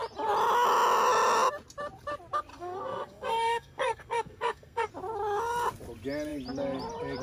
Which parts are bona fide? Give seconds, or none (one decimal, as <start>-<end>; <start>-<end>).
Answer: 0.0-2.5; 4.9-7.2